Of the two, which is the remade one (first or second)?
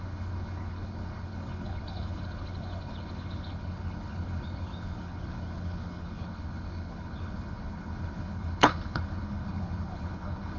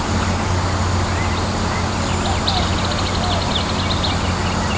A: first